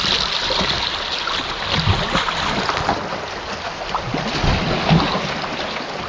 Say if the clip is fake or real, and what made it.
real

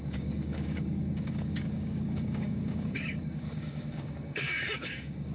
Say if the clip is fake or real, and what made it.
fake, codec, DAC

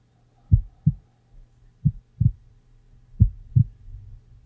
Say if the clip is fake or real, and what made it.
real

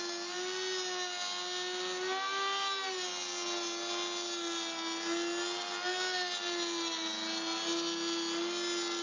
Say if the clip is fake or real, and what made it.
real